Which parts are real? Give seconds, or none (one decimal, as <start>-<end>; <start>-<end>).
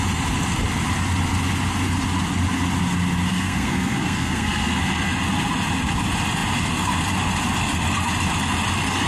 0.0-3.3; 4.8-9.1